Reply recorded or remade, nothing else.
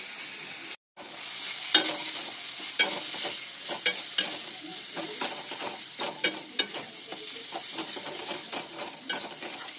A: recorded